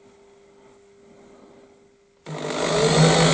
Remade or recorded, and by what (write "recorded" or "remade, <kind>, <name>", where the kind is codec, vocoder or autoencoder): recorded